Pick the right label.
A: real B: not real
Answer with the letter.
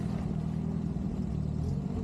A